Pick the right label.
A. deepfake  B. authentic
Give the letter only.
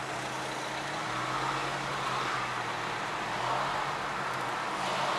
B